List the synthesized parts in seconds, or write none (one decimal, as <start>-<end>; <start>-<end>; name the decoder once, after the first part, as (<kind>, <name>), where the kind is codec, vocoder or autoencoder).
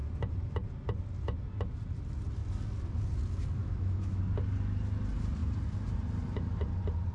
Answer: 3.6-4.2 (autoencoder, DAC-VAE)